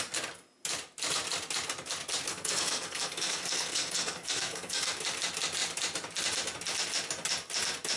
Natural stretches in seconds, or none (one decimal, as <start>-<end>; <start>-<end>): 0.0-2.3; 5.0-8.0